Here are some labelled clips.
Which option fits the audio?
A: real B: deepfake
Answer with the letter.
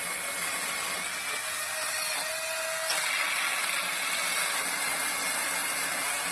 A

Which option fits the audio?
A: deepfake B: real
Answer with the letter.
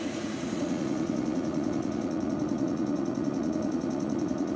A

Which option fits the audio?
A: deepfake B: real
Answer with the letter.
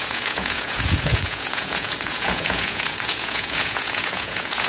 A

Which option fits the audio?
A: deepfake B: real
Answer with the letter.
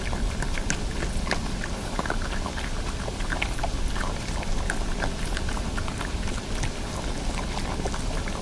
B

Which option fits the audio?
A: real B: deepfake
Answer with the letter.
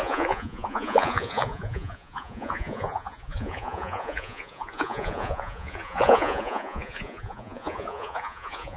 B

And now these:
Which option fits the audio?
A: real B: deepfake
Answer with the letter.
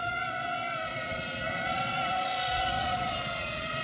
B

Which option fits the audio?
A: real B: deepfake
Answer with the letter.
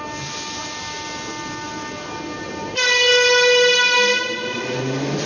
A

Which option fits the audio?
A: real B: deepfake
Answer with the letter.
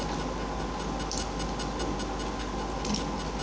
A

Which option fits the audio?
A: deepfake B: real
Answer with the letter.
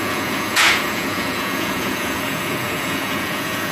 A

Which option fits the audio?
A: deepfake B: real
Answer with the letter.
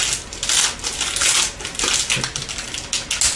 B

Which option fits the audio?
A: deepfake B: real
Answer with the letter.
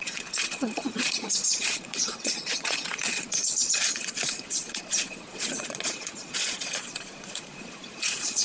A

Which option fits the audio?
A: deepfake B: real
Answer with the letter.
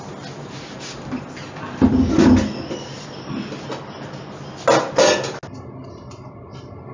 B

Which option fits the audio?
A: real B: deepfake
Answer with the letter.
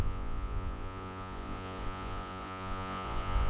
B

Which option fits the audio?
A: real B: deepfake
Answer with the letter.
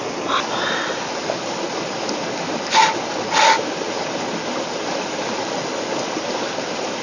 A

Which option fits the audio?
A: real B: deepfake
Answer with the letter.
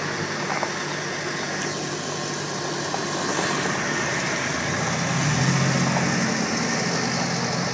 A